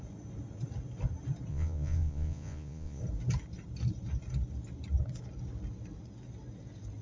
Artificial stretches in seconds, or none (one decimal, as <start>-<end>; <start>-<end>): 1.5-3.0